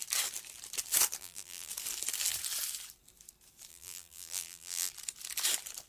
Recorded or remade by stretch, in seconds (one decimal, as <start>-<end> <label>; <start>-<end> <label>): 0.0-1.2 recorded; 1.2-1.7 remade; 1.7-3.7 recorded; 3.7-4.9 remade; 4.9-5.9 recorded